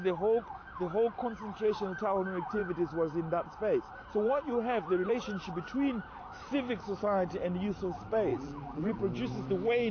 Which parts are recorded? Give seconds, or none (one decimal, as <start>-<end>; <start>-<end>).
0.0-8.3; 9.0-9.9